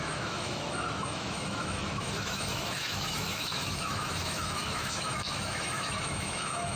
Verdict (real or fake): fake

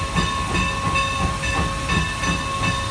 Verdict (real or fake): real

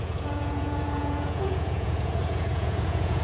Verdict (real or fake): fake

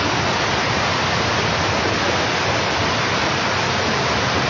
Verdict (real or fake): real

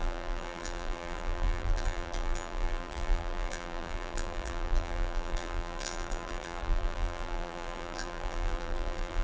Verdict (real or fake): fake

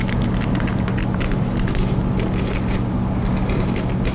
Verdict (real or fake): real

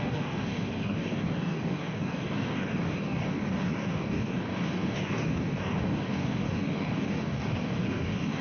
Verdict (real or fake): fake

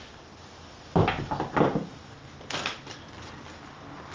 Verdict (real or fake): real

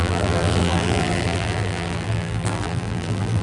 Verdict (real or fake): fake